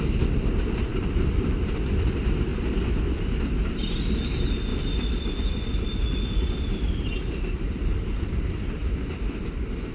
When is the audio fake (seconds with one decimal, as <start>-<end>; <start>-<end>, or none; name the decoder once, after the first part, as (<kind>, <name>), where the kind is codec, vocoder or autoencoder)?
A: none